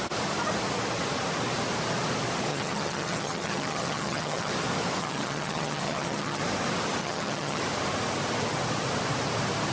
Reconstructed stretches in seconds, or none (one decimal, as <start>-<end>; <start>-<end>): 2.5-4.5; 5.0-6.4; 7.0-7.6